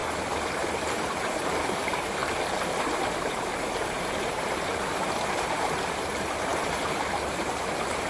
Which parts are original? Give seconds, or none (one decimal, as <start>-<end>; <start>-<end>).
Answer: 2.2-2.8